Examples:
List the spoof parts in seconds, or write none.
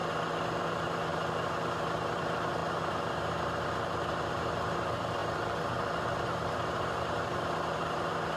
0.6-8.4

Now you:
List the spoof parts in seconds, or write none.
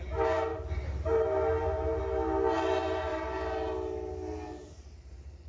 0.5-2.0; 4.5-5.5